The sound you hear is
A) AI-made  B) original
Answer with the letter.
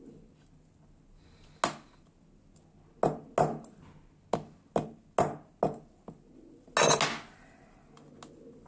B